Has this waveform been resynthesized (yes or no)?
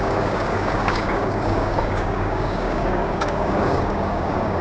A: yes